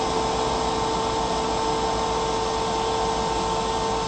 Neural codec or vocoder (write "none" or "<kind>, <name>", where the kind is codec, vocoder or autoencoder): none